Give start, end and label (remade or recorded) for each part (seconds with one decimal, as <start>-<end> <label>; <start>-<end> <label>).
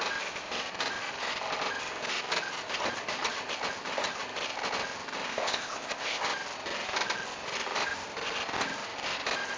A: 0.0-5.3 recorded; 5.3-6.2 remade; 6.2-9.6 recorded